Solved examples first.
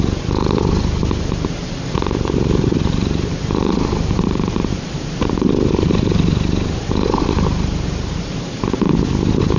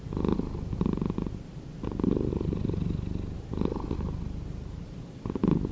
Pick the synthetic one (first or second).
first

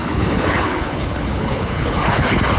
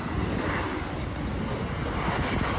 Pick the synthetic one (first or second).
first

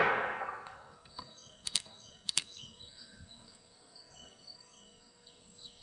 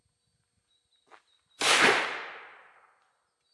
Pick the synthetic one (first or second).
first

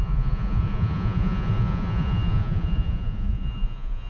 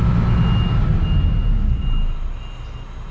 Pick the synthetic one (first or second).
first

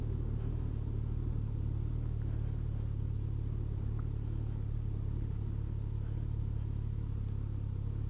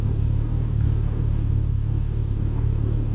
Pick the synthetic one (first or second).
second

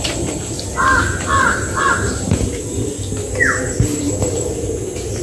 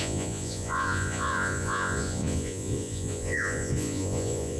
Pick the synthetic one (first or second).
second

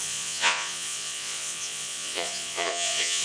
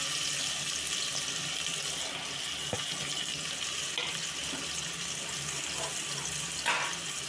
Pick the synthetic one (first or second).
first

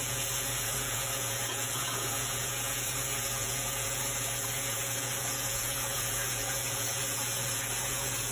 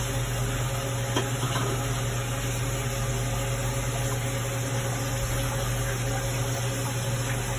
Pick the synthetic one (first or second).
first